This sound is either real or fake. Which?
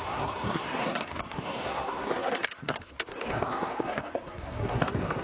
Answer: fake